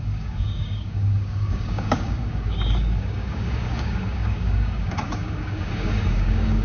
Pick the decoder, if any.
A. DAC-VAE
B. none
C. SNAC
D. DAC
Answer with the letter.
D